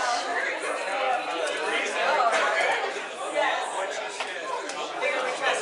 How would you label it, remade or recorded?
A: recorded